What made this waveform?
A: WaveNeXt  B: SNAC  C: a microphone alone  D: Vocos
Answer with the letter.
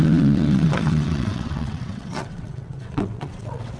A